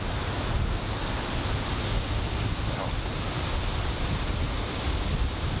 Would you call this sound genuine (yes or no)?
yes